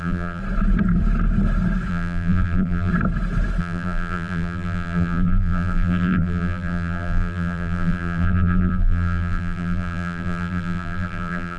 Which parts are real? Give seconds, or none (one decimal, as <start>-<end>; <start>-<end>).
0.4-1.9; 2.9-3.6